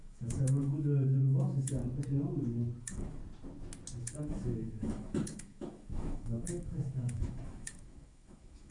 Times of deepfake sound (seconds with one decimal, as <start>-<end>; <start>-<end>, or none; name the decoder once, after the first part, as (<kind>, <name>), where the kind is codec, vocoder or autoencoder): 0.0-1.8 (autoencoder, DAC-VAE); 2.8-3.2; 4.0-8.7